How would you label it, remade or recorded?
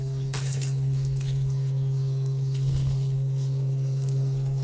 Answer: remade